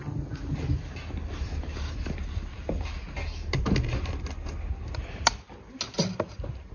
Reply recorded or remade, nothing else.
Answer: recorded